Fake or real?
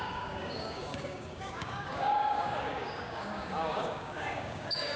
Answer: fake